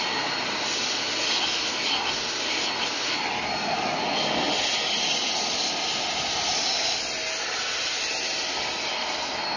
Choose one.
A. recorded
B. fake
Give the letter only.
A